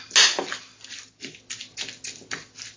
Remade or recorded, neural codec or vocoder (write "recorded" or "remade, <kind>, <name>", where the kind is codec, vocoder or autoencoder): recorded